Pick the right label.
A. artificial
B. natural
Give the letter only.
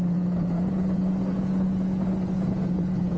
A